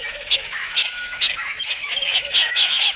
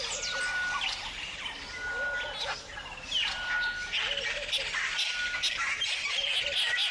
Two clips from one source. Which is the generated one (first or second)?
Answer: first